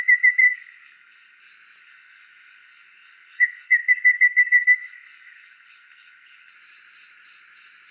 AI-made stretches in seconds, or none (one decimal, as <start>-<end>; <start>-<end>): 0.4-1.4; 1.8-6.5